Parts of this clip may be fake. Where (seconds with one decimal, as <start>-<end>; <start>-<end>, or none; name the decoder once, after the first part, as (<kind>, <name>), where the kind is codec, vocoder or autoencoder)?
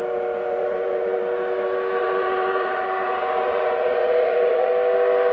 0.6-1.2 (vocoder, Vocos); 2.0-4.7